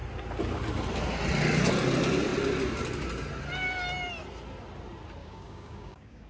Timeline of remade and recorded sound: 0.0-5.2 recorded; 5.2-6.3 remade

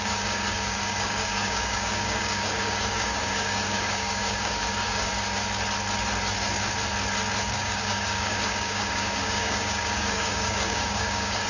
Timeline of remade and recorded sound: 0.0-5.1 remade; 5.1-7.6 recorded; 7.6-11.5 remade

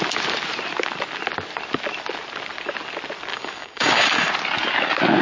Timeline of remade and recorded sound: 0.0-3.3 recorded; 3.3-4.3 remade; 4.3-5.2 recorded

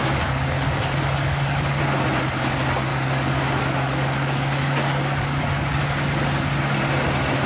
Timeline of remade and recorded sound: 0.0-1.8 remade; 1.8-2.9 recorded; 2.9-5.8 remade; 5.8-7.5 recorded

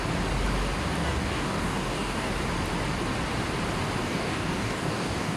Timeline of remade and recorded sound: 0.0-1.0 recorded; 1.0-2.3 remade; 2.3-4.0 recorded; 4.0-5.4 remade

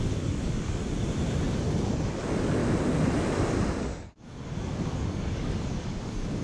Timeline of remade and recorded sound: 0.0-0.8 remade; 0.8-2.1 recorded; 2.1-2.6 remade; 2.6-3.8 recorded; 3.8-6.4 remade

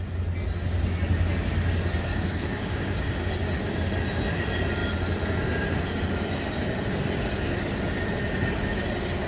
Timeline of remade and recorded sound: 0.0-2.0 recorded; 2.0-3.3 remade; 3.3-9.3 recorded

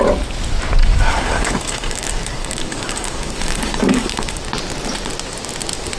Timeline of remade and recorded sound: 0.0-0.8 recorded; 0.8-4.4 remade; 4.4-6.0 recorded